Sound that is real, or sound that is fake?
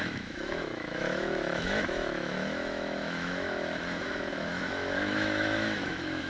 fake